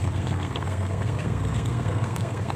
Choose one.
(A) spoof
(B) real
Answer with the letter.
A